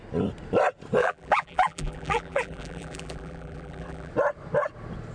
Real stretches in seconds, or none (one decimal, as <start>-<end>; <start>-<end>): 0.0-1.0; 4.1-5.1